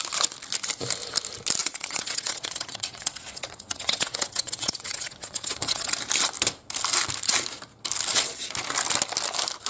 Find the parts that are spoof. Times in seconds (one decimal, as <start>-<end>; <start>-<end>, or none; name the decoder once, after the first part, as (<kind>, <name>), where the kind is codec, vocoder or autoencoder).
1.6-5.9 (vocoder, WaveNeXt)